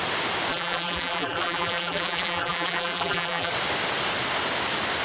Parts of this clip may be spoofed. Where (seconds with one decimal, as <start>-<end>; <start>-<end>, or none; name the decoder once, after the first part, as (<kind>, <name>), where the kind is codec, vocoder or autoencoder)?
0.5-3.5 (vocoder, BigVGAN v2)